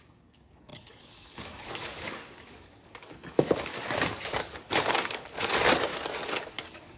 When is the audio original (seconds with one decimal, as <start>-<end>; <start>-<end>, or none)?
5.9-6.4